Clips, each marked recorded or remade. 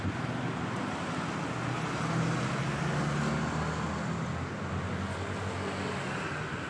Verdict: recorded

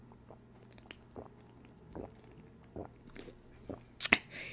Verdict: recorded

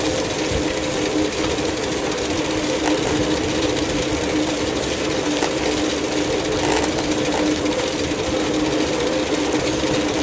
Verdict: recorded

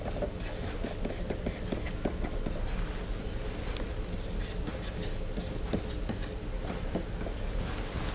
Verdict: recorded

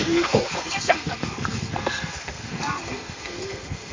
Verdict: remade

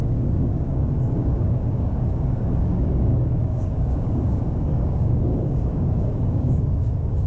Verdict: remade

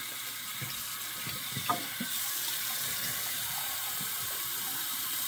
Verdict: remade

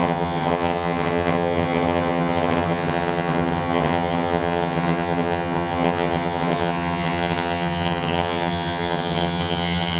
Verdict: remade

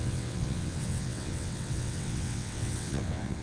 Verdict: remade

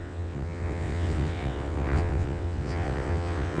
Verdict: remade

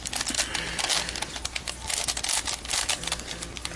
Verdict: recorded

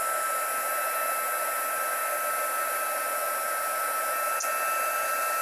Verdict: recorded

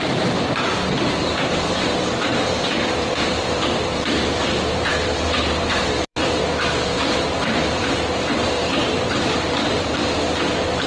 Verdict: remade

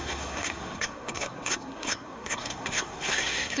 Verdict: remade